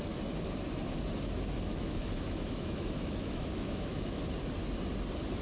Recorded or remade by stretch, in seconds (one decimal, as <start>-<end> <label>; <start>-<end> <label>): 0.0-1.7 recorded; 1.7-4.2 remade; 4.2-5.4 recorded